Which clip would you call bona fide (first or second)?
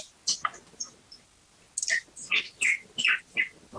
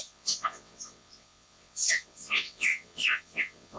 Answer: first